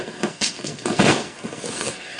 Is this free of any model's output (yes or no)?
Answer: no